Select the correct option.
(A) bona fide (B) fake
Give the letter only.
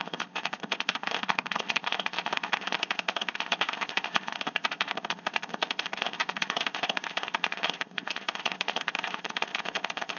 B